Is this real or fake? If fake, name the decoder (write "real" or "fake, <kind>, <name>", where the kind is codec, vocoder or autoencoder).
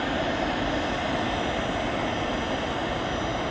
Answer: real